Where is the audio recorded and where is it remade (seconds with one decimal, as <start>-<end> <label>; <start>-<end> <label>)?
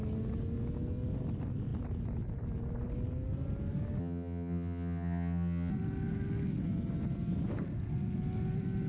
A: 0.0-4.0 recorded; 4.0-5.7 remade; 5.7-8.9 recorded